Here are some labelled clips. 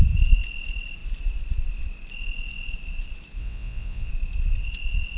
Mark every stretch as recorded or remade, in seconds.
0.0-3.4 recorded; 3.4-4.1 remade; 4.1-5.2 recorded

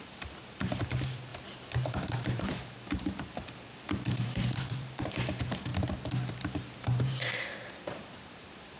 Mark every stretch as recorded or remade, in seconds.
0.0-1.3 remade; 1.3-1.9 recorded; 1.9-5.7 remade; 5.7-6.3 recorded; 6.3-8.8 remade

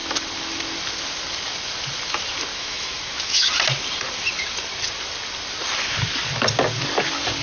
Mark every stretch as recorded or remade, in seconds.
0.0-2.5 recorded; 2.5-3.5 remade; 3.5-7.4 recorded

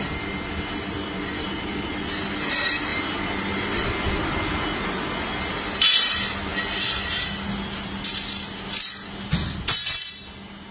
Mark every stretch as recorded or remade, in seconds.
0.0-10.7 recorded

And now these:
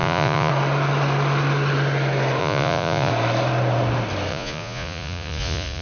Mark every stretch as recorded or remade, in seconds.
0.0-0.5 remade; 0.5-2.4 recorded; 2.4-3.1 remade; 3.1-4.3 recorded; 4.3-5.8 remade

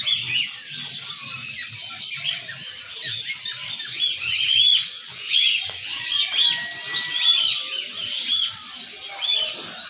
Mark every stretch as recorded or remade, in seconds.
0.0-4.7 recorded; 4.7-6.3 remade; 6.3-9.9 recorded

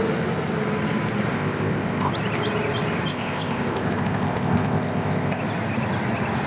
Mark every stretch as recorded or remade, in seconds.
0.0-1.3 recorded; 1.3-2.1 remade; 2.1-3.1 recorded; 3.1-5.4 remade; 5.4-6.5 recorded